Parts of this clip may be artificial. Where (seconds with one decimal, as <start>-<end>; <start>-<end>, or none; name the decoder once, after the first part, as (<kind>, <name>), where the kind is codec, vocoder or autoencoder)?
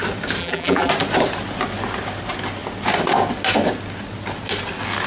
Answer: 0.4-0.9 (vocoder, BigVGAN v2)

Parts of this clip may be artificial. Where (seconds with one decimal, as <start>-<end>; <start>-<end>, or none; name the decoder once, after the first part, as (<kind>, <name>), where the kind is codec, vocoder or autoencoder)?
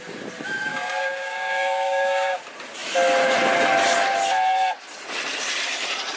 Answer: 0.7-2.4 (codec, DAC)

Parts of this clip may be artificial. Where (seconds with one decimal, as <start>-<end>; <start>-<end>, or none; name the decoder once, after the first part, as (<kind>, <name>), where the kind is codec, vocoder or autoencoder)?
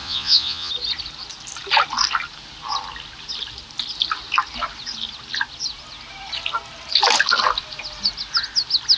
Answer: 0.0-0.7 (vocoder, Vocos)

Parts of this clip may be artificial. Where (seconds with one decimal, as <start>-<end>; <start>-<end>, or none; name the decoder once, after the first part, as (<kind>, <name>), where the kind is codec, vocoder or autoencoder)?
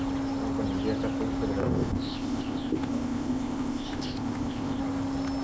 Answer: 1.6-4.8 (codec, ZipCodec)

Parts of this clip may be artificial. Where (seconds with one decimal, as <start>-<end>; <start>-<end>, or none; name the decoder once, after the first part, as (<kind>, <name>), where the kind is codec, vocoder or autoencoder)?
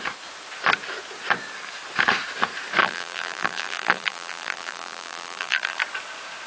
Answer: 2.8-5.8 (vocoder, BigVGAN v2)